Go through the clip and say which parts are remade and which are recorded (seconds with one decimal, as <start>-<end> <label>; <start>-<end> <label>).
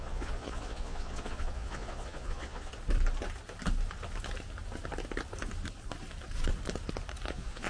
0.0-2.7 remade; 2.7-7.3 recorded; 7.3-7.7 remade